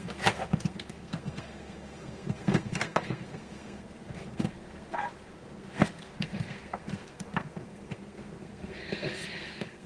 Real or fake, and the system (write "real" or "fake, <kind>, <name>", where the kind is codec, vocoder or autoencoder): fake, codec, SNAC